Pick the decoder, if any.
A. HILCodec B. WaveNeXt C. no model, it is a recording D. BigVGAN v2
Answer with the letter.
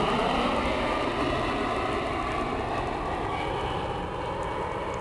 C